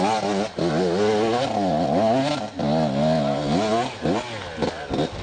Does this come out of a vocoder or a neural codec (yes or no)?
no